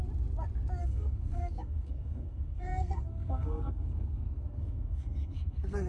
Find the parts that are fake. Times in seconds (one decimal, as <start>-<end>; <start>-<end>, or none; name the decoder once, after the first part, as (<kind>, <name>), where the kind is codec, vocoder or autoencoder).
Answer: 0.8-5.9 (codec, SNAC)